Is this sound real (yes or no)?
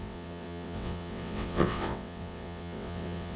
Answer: no